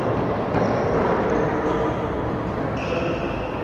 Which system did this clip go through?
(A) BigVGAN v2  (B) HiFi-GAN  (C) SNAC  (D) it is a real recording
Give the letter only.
A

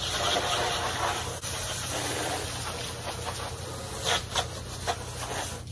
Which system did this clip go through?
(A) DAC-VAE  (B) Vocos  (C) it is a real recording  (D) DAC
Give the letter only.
C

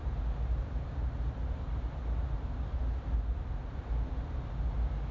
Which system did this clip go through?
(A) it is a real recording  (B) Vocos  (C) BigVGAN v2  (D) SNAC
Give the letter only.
A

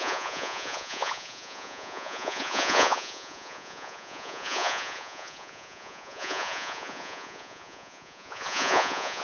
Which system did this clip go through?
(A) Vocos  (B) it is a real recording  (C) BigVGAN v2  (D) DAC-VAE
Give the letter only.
A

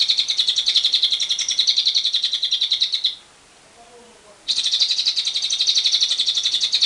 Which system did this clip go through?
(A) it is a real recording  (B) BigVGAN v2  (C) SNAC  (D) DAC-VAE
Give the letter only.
A